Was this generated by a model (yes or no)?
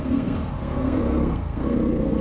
yes